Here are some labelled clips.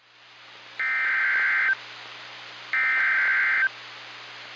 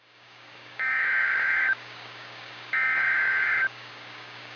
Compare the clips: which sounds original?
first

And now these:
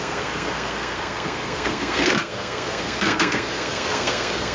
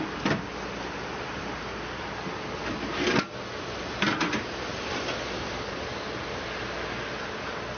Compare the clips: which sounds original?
second